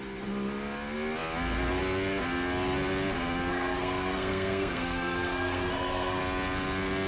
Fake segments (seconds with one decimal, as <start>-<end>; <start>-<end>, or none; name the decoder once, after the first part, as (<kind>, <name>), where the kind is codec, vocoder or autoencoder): 3.5-6.2 (codec, SNAC)